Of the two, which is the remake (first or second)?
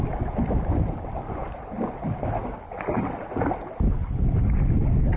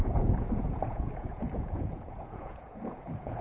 second